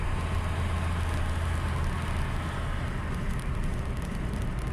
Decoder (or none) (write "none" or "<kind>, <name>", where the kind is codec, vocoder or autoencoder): none